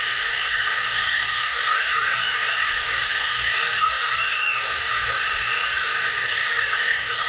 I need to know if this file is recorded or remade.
remade